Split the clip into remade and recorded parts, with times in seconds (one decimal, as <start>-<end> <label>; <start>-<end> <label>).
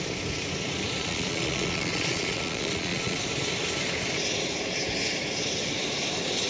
0.0-1.0 recorded; 1.0-3.2 remade; 3.2-6.5 recorded